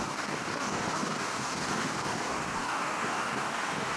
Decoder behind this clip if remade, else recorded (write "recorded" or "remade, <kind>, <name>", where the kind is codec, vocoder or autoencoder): remade, codec, DAC